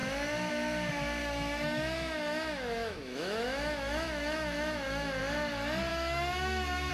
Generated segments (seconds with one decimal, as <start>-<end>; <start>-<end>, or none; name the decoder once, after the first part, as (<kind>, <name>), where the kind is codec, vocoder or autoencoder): 1.2-5.2 (autoencoder, DAC-VAE); 5.9-6.9